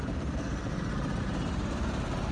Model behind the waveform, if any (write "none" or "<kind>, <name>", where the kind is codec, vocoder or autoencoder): vocoder, BigVGAN v2